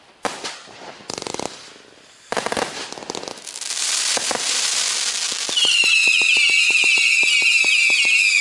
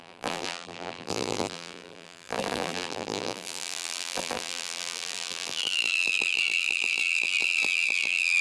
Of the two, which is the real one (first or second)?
first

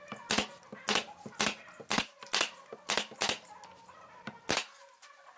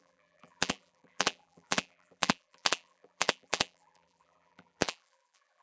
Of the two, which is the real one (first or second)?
first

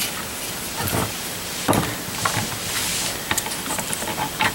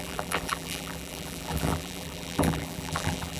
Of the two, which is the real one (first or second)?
first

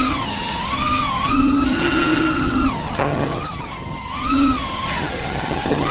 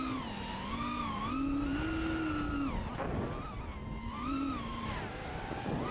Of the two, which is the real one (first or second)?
second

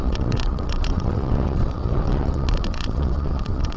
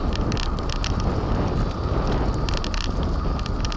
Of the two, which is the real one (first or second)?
second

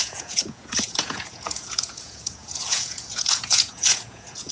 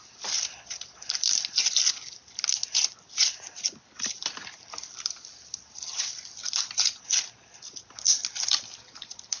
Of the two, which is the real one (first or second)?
second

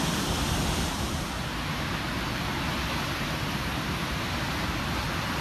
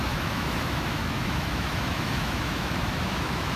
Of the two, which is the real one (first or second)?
first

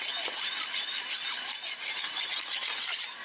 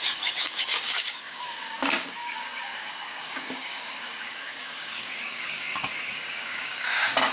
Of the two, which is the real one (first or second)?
first